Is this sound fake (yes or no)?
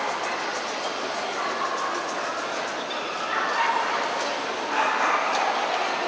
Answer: no